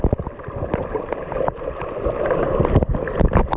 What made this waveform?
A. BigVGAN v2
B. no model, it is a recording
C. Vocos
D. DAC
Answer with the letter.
B